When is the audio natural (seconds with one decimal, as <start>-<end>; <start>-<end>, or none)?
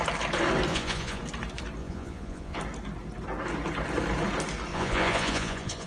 0.0-0.7; 1.2-1.8; 2.6-4.7